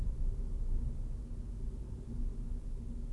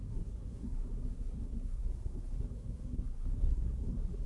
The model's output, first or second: second